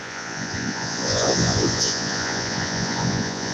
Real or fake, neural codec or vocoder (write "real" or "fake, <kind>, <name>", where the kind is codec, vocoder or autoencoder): fake, vocoder, Vocos